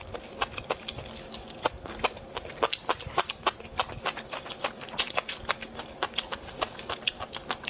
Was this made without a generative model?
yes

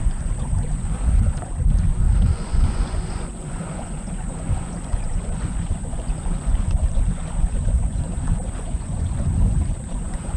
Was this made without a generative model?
no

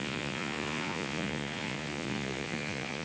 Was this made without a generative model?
no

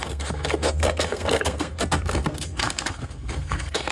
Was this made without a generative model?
no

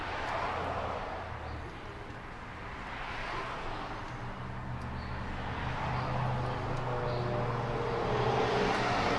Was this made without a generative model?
yes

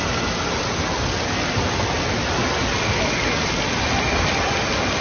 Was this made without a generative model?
yes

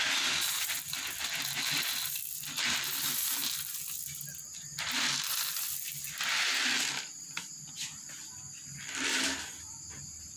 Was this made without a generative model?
yes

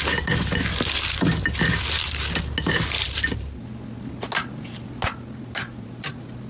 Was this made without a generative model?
yes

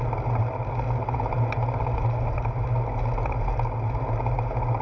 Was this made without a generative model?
yes